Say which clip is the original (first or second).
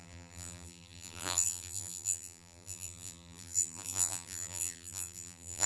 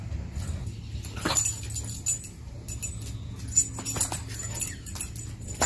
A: second